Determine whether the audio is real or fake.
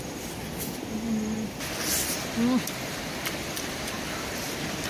real